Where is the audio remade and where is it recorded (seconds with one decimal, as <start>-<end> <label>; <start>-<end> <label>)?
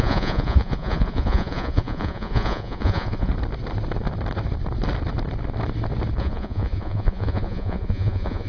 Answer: 0.0-3.3 remade; 3.3-6.2 recorded; 6.2-8.5 remade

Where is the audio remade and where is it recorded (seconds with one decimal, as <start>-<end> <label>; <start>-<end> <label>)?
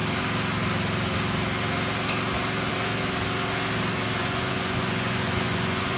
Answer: 0.0-4.2 recorded; 4.2-6.0 remade